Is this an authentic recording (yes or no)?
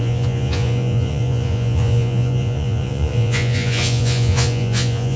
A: no